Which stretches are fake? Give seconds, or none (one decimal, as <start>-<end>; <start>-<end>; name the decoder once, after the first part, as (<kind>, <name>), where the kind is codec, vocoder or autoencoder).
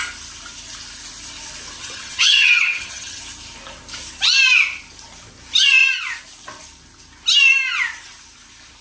1.8-3.2 (vocoder, HiFi-GAN)